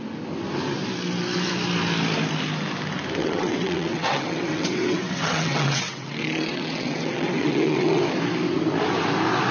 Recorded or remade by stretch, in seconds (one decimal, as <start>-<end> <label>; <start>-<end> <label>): 0.0-3.2 recorded; 3.2-8.0 remade; 8.0-9.5 recorded